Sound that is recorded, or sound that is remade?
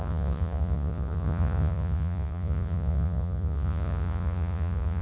remade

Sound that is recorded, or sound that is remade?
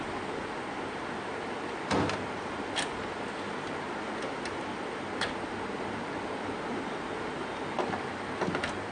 recorded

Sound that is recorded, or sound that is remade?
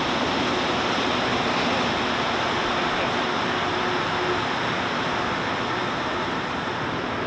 recorded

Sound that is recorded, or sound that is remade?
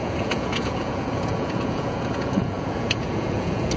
remade